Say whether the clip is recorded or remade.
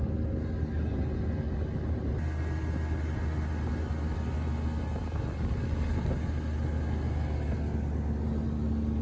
recorded